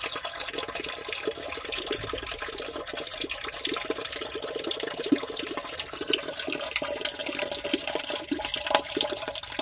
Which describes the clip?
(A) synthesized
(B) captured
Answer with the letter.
A